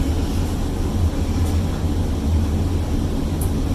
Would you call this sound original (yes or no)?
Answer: yes